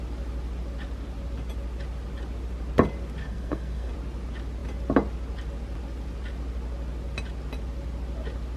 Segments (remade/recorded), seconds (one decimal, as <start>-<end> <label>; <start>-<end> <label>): 0.0-3.2 recorded; 3.2-3.9 remade; 3.9-8.6 recorded